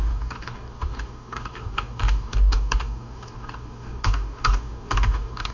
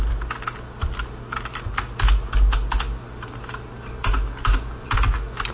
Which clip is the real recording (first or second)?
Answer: second